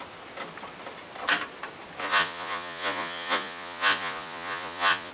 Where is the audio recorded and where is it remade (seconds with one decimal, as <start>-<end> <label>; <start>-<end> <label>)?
0.0-2.0 recorded; 2.0-5.1 remade